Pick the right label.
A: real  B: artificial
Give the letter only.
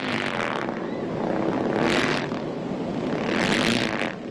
A